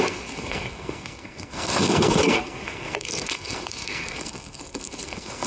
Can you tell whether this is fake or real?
fake